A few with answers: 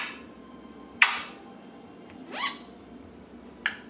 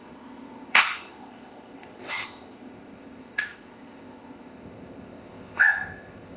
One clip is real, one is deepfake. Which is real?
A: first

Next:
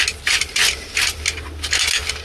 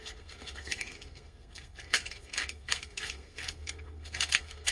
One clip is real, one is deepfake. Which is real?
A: first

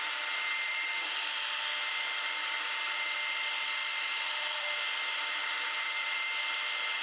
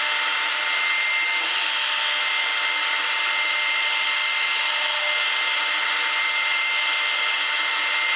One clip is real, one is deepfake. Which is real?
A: second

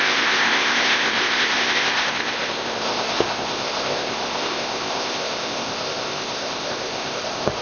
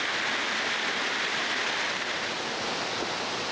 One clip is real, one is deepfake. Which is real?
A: second